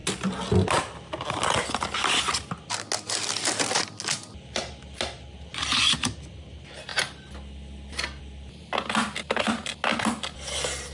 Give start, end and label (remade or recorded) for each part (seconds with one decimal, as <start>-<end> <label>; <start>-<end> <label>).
0.0-10.9 recorded